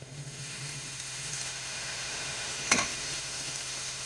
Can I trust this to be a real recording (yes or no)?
no